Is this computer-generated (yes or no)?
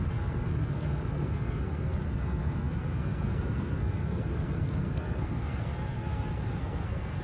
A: yes